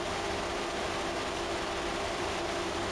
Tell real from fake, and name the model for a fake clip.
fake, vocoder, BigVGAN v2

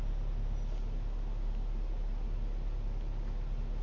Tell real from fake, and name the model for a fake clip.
real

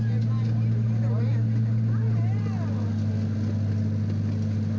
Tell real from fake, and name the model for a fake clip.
real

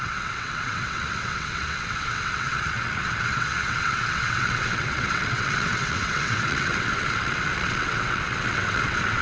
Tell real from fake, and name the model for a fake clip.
fake, vocoder, WaveNeXt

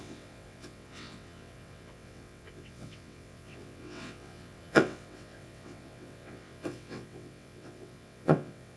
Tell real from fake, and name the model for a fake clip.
fake, vocoder, WaveNeXt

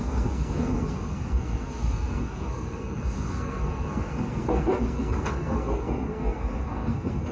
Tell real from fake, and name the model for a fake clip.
fake, codec, SNAC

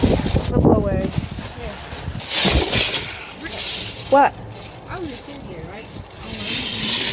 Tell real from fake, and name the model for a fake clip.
real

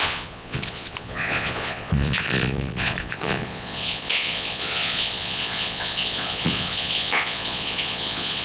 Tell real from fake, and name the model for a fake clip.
fake, vocoder, Vocos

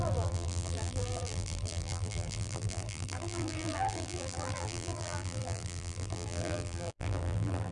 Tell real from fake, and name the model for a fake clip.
fake, vocoder, BigVGAN v2